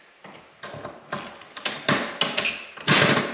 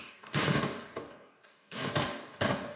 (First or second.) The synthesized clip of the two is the second